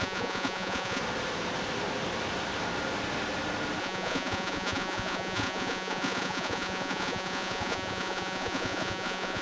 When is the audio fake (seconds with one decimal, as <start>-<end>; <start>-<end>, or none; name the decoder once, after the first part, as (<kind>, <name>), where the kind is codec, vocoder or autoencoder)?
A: 0.0-1.0 (vocoder, Vocos); 3.8-9.4